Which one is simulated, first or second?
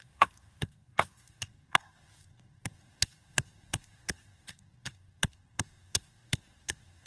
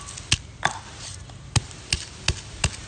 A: first